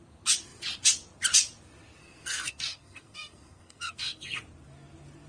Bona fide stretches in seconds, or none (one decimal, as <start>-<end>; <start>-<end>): 0.0-2.0; 4.4-5.3